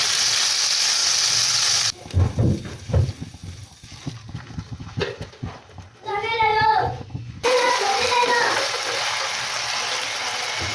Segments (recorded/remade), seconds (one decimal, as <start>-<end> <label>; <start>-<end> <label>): 0.0-6.5 recorded; 6.5-8.0 remade; 8.0-10.7 recorded